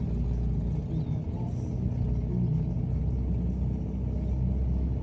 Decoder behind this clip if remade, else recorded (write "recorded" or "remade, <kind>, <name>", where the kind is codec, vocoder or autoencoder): recorded